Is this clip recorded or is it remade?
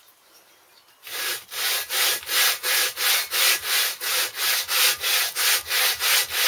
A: recorded